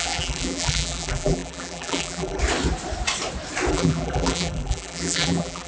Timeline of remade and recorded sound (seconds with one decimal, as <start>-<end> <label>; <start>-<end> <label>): 0.0-2.4 remade; 2.4-3.7 recorded; 3.7-5.7 remade